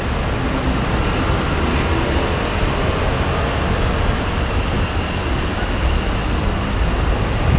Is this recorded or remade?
recorded